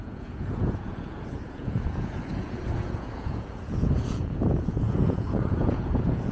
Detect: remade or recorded remade